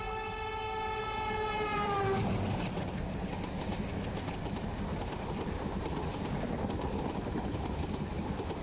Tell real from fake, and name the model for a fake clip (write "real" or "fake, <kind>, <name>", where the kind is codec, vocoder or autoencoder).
fake, vocoder, BigVGAN v2